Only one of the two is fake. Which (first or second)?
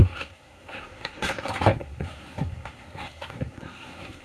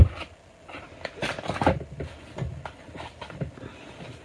first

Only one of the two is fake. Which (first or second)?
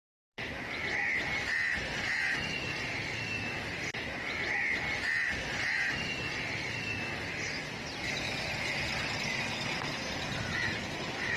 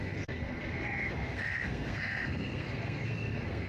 second